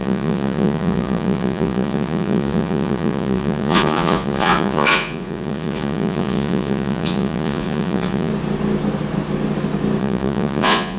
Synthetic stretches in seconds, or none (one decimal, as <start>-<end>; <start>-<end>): 0.0-8.3; 10.0-11.0